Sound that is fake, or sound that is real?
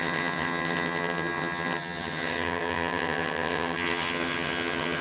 fake